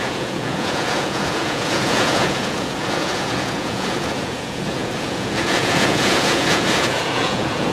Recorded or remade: remade